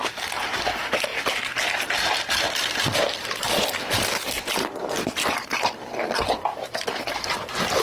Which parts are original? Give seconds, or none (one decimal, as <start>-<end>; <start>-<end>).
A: 0.0-6.5; 7.0-7.8